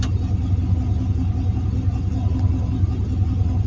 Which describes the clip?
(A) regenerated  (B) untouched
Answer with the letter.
B